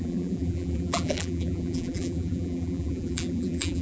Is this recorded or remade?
remade